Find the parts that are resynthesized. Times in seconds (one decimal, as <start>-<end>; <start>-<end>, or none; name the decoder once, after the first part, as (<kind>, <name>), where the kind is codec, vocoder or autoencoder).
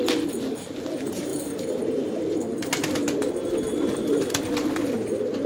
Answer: none